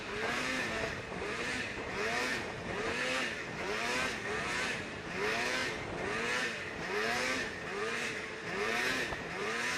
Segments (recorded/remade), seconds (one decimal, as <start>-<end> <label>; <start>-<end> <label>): 0.0-5.6 remade; 5.6-6.4 recorded; 6.4-9.8 remade

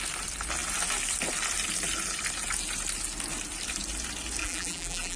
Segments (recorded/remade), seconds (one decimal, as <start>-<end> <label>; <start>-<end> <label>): 0.0-4.4 recorded; 4.4-5.2 remade

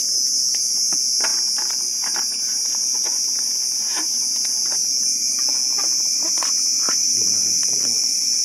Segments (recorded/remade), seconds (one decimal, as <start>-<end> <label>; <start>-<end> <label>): 0.0-7.0 recorded; 7.0-8.4 remade

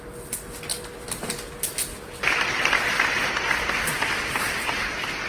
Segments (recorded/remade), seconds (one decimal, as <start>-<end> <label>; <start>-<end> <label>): 0.0-0.7 recorded; 0.7-1.5 remade; 1.5-1.9 recorded; 1.9-5.3 remade

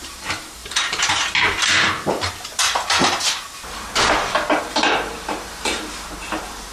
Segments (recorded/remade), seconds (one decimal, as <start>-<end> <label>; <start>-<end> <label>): 0.0-6.7 remade

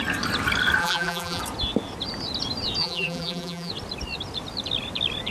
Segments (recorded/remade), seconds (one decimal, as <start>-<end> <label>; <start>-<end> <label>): 0.0-0.8 recorded; 0.8-1.4 remade; 1.4-2.8 recorded; 2.8-3.7 remade; 3.7-5.3 recorded